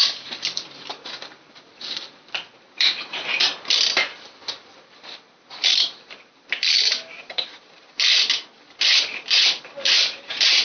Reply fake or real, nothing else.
fake